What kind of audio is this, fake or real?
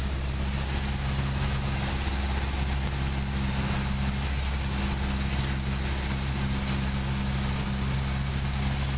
real